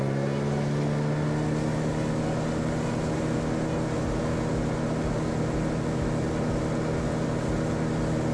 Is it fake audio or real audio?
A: real